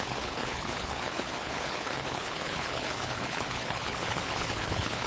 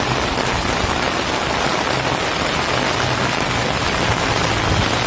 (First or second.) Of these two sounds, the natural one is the second